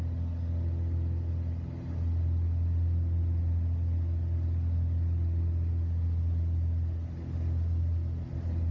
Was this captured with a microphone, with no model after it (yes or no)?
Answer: yes